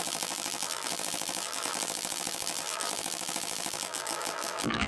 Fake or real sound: fake